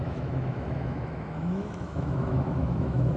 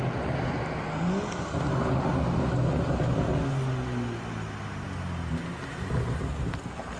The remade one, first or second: first